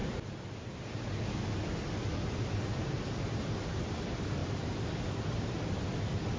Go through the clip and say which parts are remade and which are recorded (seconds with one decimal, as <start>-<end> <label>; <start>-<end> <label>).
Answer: 0.0-4.4 recorded; 4.4-4.9 remade; 4.9-6.4 recorded